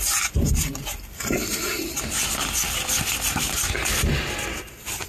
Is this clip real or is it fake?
real